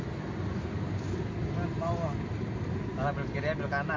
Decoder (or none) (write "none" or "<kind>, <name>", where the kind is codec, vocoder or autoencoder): none